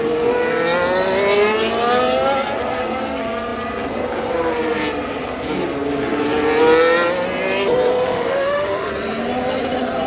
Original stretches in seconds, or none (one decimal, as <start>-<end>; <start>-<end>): 0.0-7.9; 8.9-10.1